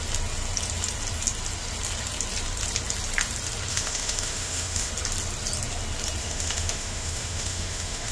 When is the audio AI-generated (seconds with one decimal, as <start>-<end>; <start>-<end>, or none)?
3.7-4.9; 6.2-8.1